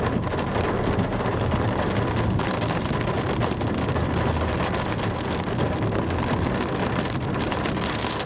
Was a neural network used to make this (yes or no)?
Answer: no